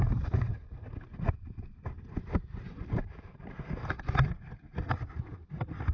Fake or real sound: real